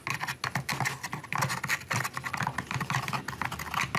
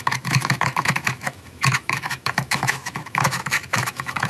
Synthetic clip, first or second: second